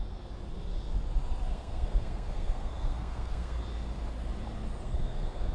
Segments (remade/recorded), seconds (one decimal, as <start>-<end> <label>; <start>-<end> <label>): 0.0-1.5 recorded; 1.5-3.6 remade; 3.6-4.8 recorded; 4.8-5.5 remade